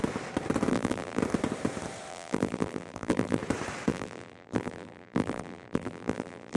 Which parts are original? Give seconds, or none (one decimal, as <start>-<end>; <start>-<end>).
0.0-0.7; 1.2-2.1; 3.4-3.9